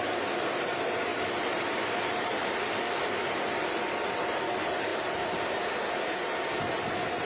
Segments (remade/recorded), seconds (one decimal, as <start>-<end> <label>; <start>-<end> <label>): 0.0-1.1 recorded; 1.1-2.8 remade; 2.8-7.3 recorded